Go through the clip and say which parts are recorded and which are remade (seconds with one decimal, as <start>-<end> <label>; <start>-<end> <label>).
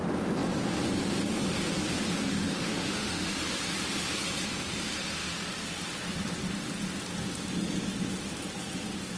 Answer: 0.0-2.3 recorded; 2.3-3.3 remade; 3.3-9.2 recorded